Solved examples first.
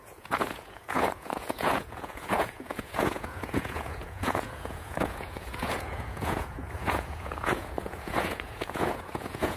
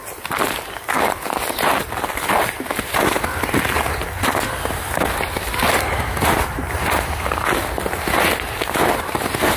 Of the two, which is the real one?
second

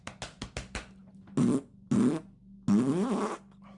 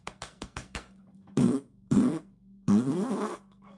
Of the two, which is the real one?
first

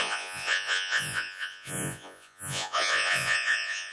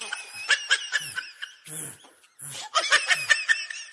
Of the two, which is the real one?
second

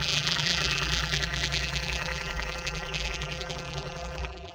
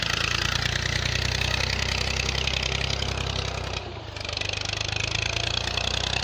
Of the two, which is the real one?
second